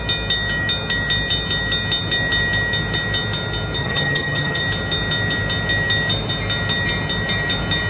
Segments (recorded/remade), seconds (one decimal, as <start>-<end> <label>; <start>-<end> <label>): 0.0-3.8 recorded; 3.8-4.6 remade; 4.6-7.9 recorded